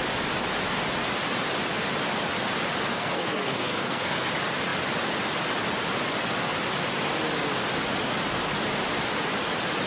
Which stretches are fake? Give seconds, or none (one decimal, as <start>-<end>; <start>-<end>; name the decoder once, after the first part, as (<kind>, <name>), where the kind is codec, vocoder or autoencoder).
2.9-4.3 (codec, SNAC)